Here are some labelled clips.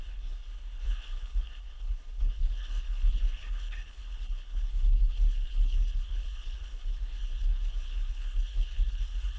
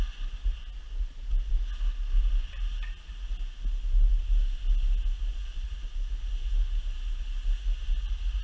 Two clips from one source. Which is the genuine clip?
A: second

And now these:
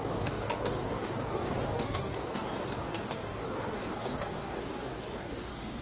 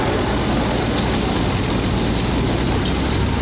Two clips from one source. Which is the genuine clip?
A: second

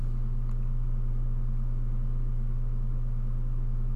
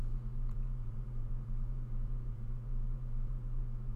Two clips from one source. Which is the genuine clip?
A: first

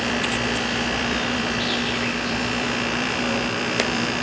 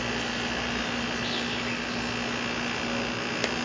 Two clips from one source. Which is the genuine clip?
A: second